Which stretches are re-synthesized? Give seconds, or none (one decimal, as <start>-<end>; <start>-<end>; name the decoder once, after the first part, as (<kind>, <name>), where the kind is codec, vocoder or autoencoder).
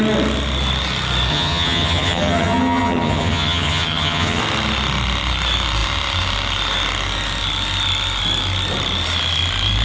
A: 1.3-4.4 (vocoder, HiFi-GAN)